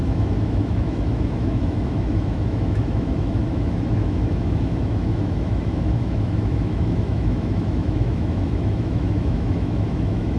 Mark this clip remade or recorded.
remade